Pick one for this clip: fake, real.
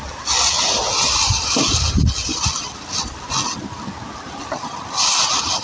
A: real